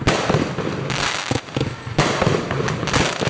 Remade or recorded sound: recorded